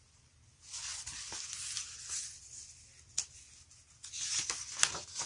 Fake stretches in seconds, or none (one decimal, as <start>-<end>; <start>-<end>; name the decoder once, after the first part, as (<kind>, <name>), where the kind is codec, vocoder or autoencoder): none

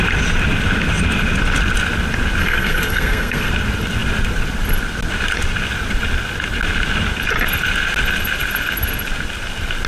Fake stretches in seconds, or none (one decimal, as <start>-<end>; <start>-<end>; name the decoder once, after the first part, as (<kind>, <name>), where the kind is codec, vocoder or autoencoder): 2.4-3.5 (codec, SNAC)

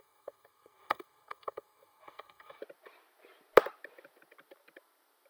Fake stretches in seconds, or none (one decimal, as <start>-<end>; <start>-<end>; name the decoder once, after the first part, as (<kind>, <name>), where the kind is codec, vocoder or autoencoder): 0.0-2.6 (codec, SNAC)

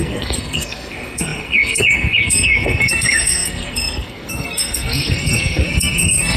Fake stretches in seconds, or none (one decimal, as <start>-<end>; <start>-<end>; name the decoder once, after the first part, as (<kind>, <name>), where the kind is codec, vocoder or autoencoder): 0.0-6.4 (codec, SNAC)